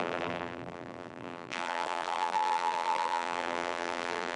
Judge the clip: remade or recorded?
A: remade